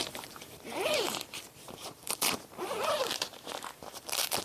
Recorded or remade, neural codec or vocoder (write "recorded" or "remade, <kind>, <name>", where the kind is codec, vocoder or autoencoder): remade, vocoder, BigVGAN v2